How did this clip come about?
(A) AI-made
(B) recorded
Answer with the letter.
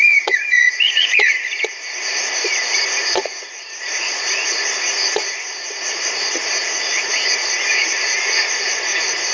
A